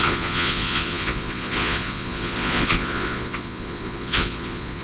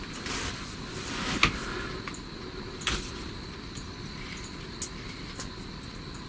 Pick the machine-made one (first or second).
first